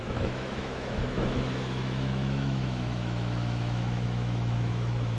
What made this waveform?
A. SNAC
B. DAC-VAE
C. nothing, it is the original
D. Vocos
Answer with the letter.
B